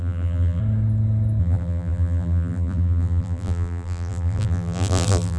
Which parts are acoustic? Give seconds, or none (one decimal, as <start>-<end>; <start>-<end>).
0.6-1.4